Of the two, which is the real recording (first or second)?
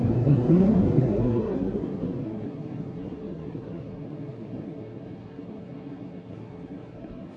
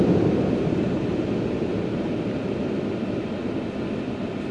second